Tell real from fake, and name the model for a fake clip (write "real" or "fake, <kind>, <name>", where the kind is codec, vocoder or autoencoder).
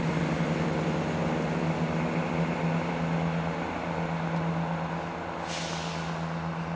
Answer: real